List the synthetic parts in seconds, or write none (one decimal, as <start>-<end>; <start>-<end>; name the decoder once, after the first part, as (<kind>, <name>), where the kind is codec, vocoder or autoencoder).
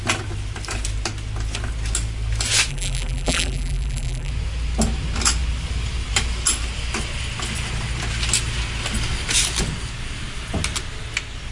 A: 2.7-4.3 (vocoder, BigVGAN v2)